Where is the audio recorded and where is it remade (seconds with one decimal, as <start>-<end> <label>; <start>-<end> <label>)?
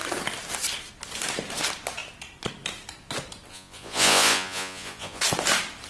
0.0-3.5 recorded; 3.5-5.2 remade; 5.2-5.9 recorded